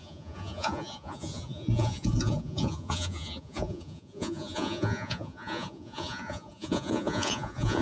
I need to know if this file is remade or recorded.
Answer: remade